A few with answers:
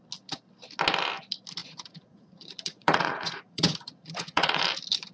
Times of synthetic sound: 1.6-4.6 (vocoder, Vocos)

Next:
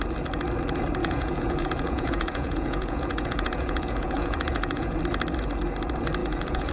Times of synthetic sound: 1.0-5.0 (vocoder, Vocos); 6.2-6.7

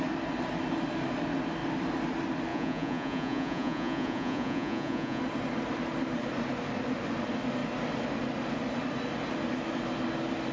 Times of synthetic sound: 2.5-5.2 (vocoder, Vocos)

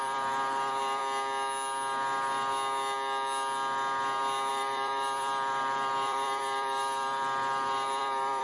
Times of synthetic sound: 0.0-1.0 (vocoder, BigVGAN v2); 4.5-8.4

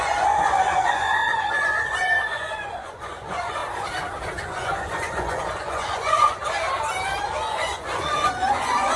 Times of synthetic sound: 0.0-3.6 (vocoder, Vocos); 4.5-6.4; 7.4-9.0

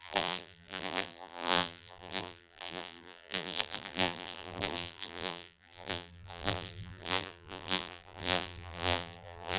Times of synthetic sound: 0.0-9.6 (vocoder, BigVGAN v2)